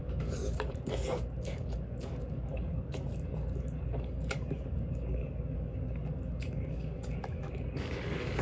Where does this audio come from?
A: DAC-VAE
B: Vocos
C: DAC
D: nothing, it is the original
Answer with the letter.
C